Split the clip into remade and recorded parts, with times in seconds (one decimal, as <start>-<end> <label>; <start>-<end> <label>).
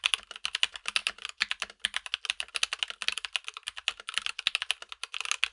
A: 0.0-5.5 recorded